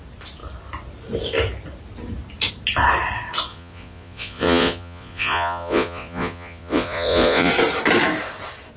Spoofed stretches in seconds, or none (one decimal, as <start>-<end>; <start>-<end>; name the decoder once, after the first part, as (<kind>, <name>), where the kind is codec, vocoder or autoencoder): 3.5-7.5 (vocoder, Vocos)